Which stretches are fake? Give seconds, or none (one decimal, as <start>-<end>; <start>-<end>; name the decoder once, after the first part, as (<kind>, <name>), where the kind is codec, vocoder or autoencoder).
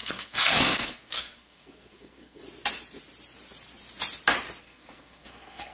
0.0-2.4 (codec, SNAC); 4.6-5.7